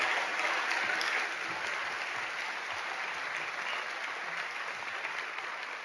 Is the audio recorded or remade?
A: recorded